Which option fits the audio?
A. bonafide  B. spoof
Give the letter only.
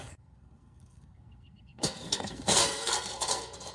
B